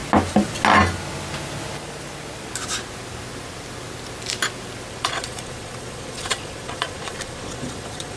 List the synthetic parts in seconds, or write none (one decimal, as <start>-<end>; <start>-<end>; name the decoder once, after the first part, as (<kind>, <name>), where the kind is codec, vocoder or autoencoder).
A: 4.9-8.2 (vocoder, Vocos)